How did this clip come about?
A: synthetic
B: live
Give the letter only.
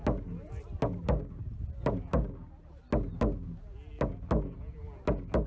B